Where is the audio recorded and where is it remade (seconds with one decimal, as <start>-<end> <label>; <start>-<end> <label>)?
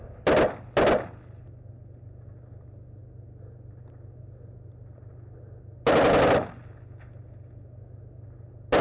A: 0.0-8.8 recorded